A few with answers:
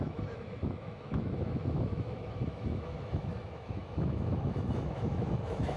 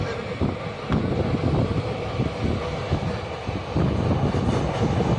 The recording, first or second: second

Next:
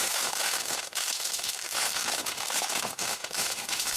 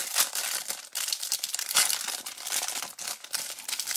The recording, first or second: second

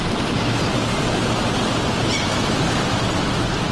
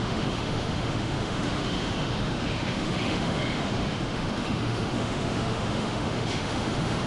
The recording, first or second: first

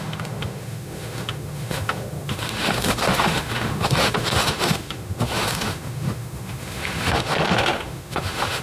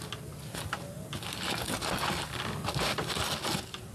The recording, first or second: second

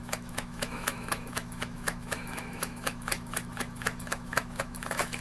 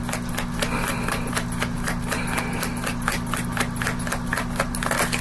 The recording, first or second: second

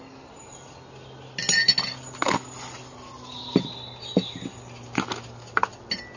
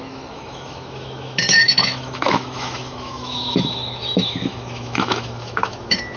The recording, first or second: first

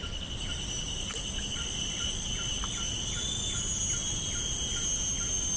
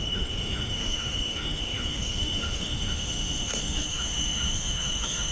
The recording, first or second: first